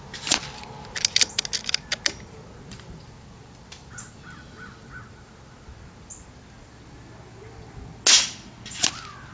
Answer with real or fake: real